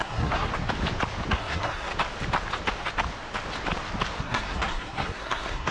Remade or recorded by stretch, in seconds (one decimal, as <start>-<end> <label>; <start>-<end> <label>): 0.0-0.5 remade; 0.5-1.3 recorded; 1.3-1.9 remade; 1.9-4.2 recorded; 4.2-5.7 remade